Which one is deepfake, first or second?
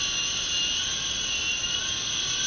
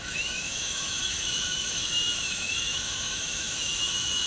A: second